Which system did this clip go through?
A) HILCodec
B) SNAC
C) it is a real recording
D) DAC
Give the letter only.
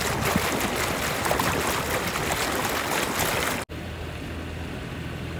C